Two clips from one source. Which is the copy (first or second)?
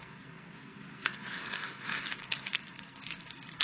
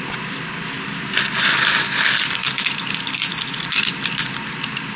first